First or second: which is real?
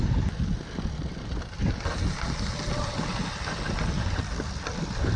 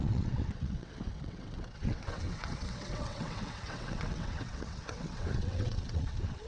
first